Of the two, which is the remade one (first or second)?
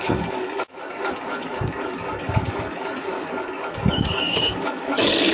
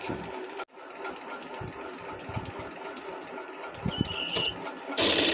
first